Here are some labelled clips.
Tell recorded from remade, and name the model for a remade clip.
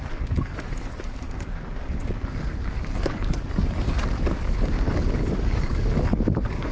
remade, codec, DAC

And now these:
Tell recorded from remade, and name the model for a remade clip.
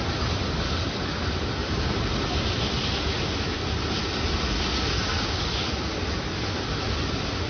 recorded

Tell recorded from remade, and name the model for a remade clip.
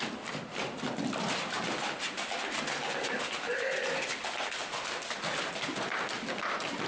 recorded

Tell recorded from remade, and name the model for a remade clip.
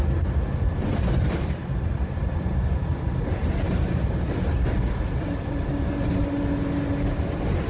recorded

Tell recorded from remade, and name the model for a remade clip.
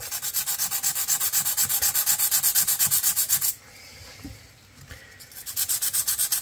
recorded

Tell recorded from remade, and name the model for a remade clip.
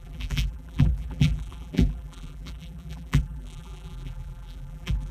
remade, vocoder, BigVGAN v2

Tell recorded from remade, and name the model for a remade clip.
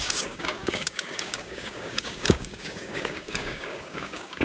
remade, codec, DAC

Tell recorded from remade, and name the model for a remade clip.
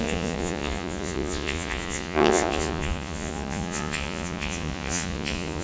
remade, vocoder, Vocos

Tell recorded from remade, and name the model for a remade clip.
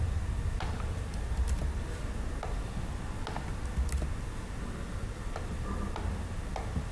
recorded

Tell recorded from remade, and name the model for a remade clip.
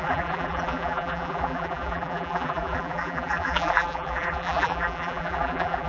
remade, vocoder, BigVGAN v2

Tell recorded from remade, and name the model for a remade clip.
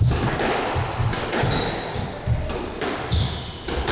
recorded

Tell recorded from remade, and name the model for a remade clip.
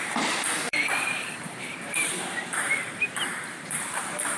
remade, vocoder, BigVGAN v2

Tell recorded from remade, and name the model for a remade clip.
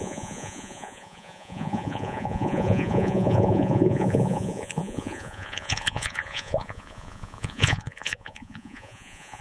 remade, vocoder, Vocos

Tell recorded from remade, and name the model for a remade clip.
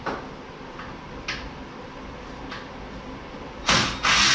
recorded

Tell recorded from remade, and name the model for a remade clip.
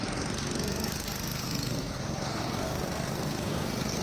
remade, codec, SNAC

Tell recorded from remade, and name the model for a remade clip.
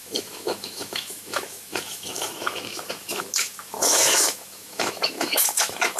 remade, autoencoder, DAC-VAE